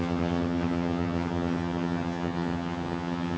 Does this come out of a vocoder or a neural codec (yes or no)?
yes